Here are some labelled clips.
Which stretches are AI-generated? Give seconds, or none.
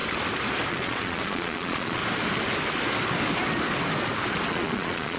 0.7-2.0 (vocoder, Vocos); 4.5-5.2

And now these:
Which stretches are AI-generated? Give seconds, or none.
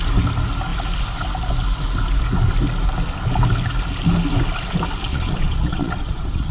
5.1-6.5 (vocoder, Vocos)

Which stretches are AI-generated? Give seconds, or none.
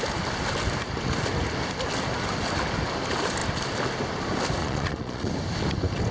4.6-5.3 (vocoder, Vocos)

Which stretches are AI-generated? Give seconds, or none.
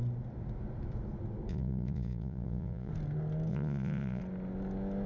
1.5-2.9 (vocoder, Vocos); 3.5-4.2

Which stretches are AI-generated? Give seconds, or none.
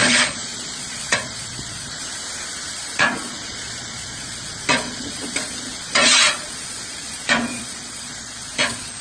0.0-2.0 (vocoder, Vocos); 2.7-9.0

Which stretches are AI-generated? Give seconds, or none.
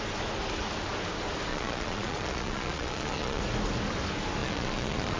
1.5-3.4 (vocoder, Vocos); 4.4-5.2